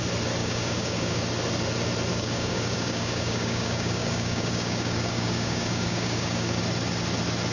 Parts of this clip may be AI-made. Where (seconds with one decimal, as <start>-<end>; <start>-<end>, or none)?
0.4-1.2; 2.1-6.6